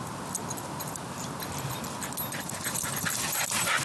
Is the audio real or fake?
real